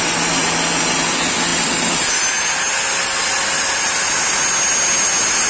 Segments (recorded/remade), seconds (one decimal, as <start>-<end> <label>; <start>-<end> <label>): 0.0-5.5 recorded